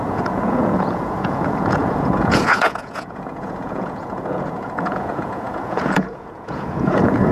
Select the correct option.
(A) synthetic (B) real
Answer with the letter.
A